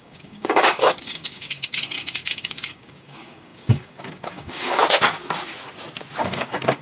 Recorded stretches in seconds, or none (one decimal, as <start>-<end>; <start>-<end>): 4.8-6.2